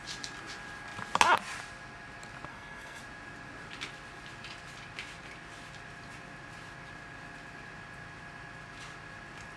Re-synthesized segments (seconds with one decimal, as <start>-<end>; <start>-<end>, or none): 2.5-3.0